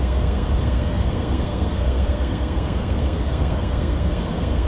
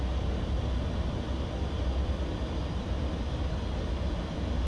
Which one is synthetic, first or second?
first